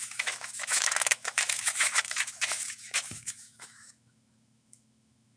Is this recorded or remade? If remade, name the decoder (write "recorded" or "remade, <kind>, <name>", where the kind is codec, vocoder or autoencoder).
remade, autoencoder, DAC-VAE